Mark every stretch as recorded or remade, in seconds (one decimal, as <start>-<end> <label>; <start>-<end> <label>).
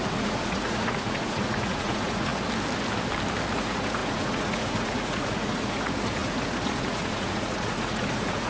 0.0-2.3 remade; 2.3-3.5 recorded; 3.5-8.5 remade